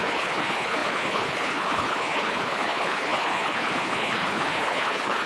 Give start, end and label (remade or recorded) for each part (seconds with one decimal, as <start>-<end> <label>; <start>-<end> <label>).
0.0-5.3 remade